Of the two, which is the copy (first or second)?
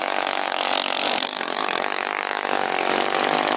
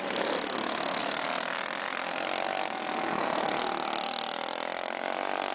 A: first